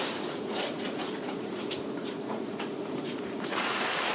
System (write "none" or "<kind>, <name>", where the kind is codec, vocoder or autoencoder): vocoder, Vocos